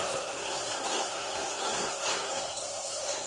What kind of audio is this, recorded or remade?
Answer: remade